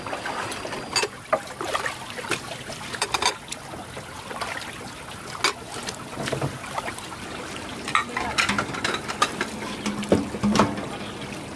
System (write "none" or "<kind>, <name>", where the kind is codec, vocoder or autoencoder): none